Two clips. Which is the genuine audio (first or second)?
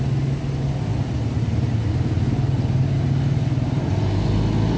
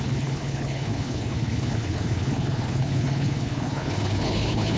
first